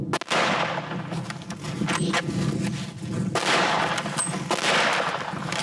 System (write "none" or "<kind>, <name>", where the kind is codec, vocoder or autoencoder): none